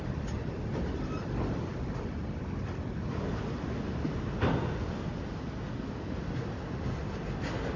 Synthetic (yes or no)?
no